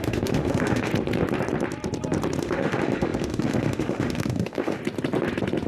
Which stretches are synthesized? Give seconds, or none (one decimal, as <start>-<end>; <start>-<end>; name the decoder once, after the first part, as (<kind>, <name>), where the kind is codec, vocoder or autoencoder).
0.0-0.9 (autoencoder, DAC-VAE); 2.4-4.8